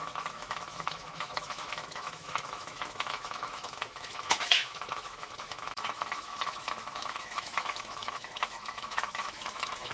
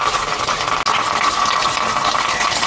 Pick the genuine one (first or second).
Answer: second